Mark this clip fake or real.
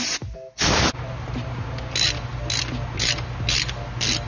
real